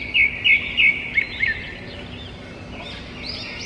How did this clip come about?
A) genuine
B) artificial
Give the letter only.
A